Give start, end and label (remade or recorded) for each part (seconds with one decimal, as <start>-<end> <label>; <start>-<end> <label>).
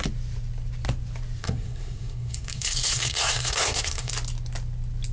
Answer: 0.0-1.4 recorded; 1.4-4.1 remade; 4.1-5.1 recorded